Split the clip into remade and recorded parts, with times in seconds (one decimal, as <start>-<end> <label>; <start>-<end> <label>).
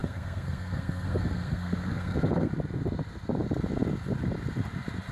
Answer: 0.0-2.5 remade; 2.5-5.1 recorded